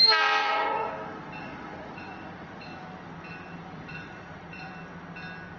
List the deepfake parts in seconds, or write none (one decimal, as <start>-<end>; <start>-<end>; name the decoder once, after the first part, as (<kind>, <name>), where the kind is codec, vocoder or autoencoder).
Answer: 0.4-0.9 (vocoder, Vocos); 1.4-2.8; 3.5-4.7